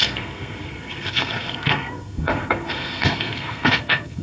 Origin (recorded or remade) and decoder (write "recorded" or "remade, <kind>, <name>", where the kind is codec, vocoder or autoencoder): remade, codec, SNAC